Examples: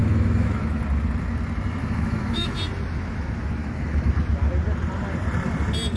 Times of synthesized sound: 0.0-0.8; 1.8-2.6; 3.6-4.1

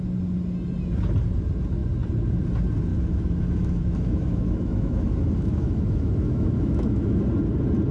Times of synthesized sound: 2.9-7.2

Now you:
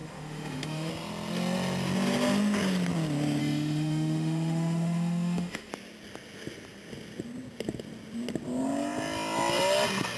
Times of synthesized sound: 0.0-0.9; 3.4-5.7

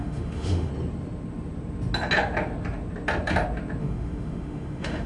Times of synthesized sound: 0.0-0.7; 3.8-5.1

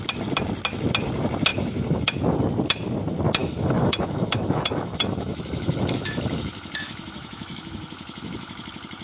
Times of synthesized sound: 1.5-2.2; 3.4-8.5

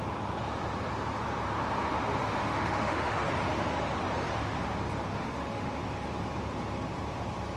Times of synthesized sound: 2.4-3.3; 5.1-5.7

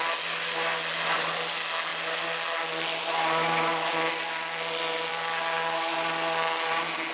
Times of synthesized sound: none

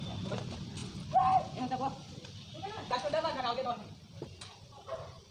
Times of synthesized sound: none